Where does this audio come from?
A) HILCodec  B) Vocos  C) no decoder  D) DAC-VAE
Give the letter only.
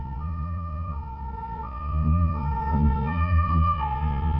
B